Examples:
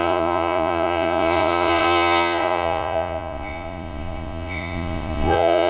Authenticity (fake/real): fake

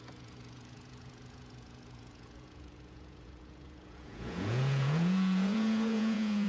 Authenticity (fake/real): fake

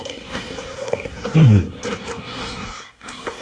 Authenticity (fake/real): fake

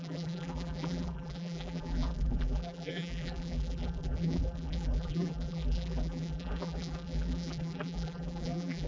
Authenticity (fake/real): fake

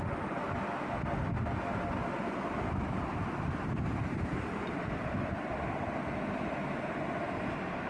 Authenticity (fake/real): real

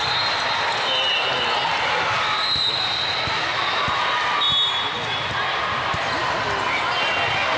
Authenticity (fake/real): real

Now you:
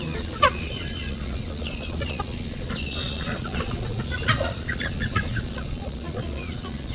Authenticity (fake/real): fake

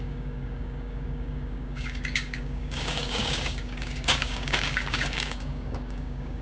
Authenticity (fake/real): fake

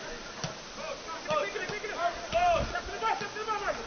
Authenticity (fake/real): real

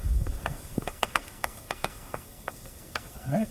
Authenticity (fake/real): fake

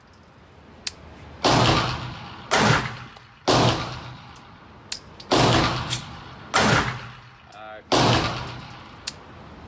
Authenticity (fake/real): real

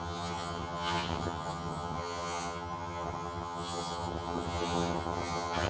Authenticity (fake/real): fake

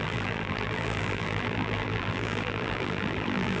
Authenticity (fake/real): fake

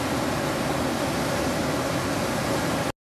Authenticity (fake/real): real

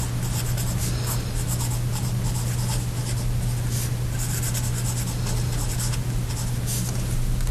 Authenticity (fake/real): real